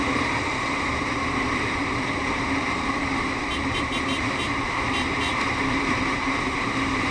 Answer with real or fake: fake